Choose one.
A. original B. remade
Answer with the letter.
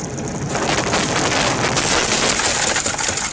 A